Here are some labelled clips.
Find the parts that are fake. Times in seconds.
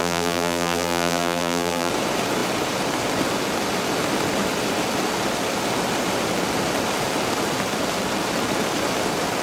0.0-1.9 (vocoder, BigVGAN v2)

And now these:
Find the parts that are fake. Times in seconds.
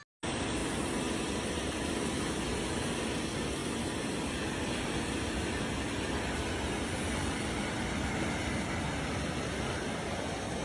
none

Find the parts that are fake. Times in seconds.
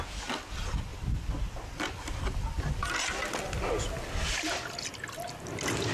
0.9-2.0 (vocoder, BigVGAN v2)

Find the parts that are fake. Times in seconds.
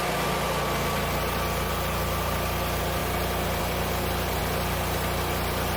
4.4-5.8 (vocoder, BigVGAN v2)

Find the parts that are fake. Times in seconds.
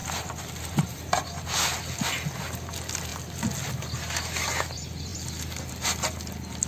0.0-1.4 (vocoder, BigVGAN v2); 5.1-5.7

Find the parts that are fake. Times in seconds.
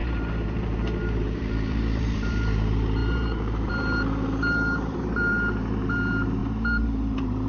0.0-7.5 (vocoder, BigVGAN v2)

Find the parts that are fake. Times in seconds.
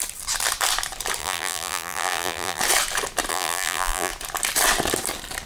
1.2-2.6 (vocoder, BigVGAN v2); 3.3-4.1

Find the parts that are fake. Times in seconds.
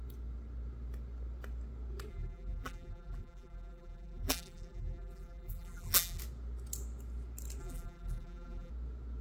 2.1-6.2 (vocoder, BigVGAN v2); 7.6-8.7